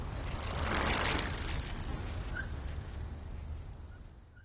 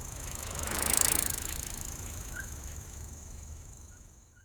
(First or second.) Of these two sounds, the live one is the first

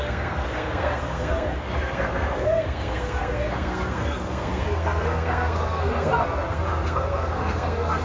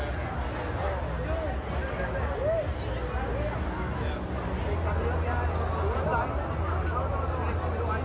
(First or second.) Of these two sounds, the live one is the second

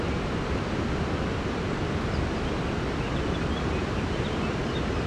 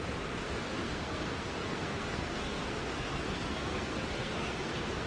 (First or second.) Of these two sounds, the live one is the first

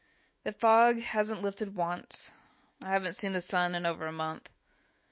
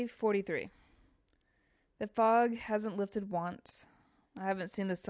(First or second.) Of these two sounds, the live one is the second